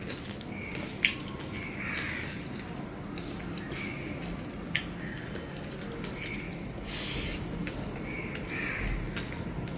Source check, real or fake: real